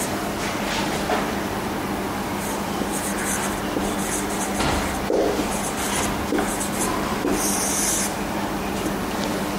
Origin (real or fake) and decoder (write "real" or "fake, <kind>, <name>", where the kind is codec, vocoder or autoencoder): fake, vocoder, BigVGAN v2